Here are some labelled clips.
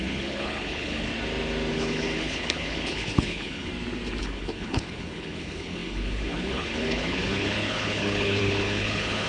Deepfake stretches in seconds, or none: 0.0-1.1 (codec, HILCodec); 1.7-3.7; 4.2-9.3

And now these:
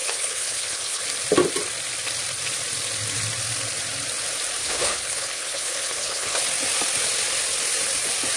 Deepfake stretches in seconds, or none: 0.0-1.0 (codec, HILCodec); 4.6-6.4

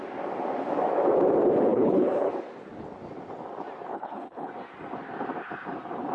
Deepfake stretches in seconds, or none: 1.7-2.3 (codec, HILCodec); 3.9-4.5

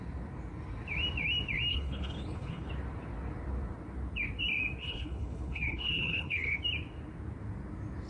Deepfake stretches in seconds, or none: 1.7-2.7 (codec, HILCodec); 4.8-6.6

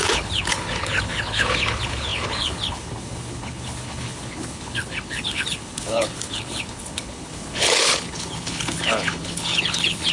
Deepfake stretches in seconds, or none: 0.0-10.1 (codec, HILCodec)

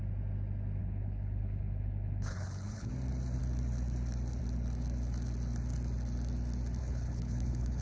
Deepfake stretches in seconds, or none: 0.8-2.9 (codec, HILCodec); 6.8-7.8

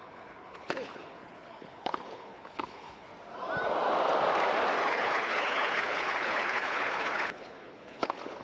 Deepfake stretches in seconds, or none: 0.0-3.1 (codec, HILCodec); 4.8-8.4

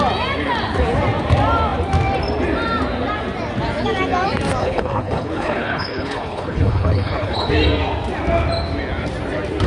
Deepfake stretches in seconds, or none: 4.6-7.5 (codec, HILCodec)